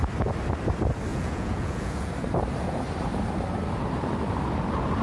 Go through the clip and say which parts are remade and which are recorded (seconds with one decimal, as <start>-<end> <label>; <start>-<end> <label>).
0.0-1.1 recorded; 1.1-2.1 remade; 2.1-5.0 recorded